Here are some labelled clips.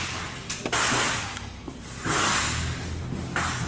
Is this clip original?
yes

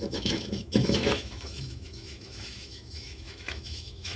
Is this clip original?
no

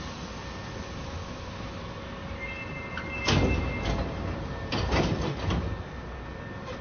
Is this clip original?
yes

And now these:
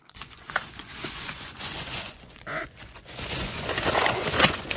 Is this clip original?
no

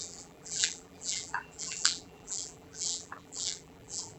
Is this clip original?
no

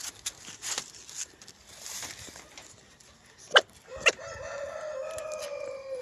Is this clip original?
yes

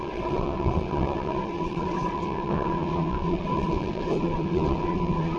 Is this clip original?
no